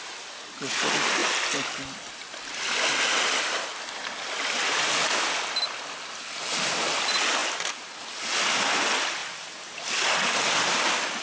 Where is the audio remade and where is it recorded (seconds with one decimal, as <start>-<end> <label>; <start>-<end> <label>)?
0.0-7.4 recorded; 7.4-8.1 remade; 8.1-11.2 recorded